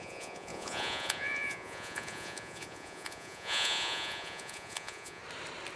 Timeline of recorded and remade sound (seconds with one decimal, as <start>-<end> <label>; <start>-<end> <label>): 0.0-5.2 remade; 5.2-5.8 recorded